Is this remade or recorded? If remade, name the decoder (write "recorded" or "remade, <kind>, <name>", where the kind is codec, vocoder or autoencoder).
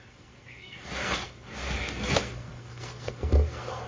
remade, codec, SNAC